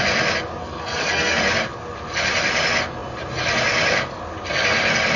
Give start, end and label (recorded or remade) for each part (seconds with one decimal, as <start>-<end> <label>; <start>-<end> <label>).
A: 0.0-0.6 recorded; 0.6-1.4 remade; 1.4-5.2 recorded